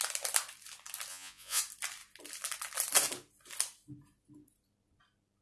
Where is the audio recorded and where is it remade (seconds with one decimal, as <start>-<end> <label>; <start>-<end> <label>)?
0.0-1.1 recorded; 1.1-1.6 remade; 1.6-5.4 recorded